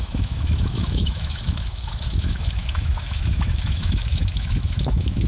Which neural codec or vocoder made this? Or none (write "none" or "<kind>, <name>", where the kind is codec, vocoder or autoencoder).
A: autoencoder, DAC-VAE